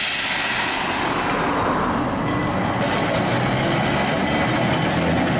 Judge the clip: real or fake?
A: real